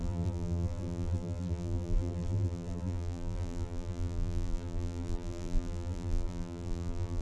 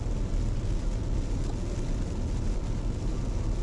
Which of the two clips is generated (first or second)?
first